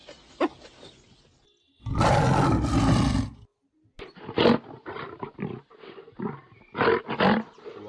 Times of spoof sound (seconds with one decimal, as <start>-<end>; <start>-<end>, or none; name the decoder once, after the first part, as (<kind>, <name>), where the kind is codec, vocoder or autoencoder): none

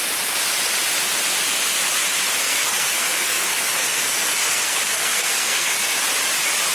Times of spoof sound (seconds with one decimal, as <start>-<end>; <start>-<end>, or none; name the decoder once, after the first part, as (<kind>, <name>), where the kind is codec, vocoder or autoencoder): 2.4-6.0 (codec, SNAC)

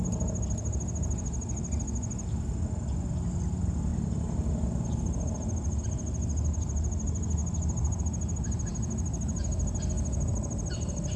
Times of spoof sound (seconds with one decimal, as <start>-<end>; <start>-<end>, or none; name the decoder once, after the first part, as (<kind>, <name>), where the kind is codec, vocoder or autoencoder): none

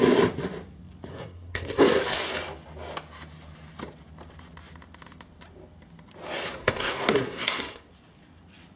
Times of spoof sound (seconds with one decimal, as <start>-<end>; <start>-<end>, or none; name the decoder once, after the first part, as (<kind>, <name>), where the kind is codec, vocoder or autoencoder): 1.1-1.8 (codec, SNAC); 6.6-7.9

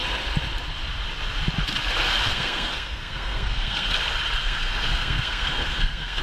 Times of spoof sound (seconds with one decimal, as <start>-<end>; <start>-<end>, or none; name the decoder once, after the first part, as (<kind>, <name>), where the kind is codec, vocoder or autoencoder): 2.3-3.9 (codec, SNAC); 4.4-6.2

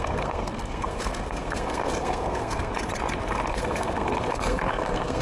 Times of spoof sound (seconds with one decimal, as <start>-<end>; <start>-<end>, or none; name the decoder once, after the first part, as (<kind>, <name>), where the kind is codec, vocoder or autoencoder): 0.0-2.7 (codec, SNAC); 3.5-5.2